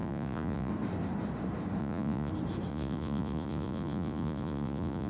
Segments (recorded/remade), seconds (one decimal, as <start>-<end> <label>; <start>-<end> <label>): 0.0-0.7 remade; 0.7-1.8 recorded; 1.8-2.3 remade; 2.3-2.7 recorded; 2.7-5.1 remade